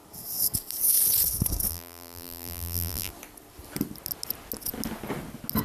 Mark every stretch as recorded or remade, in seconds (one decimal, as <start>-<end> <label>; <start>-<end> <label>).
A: 0.0-1.7 recorded; 1.7-3.1 remade; 3.1-5.6 recorded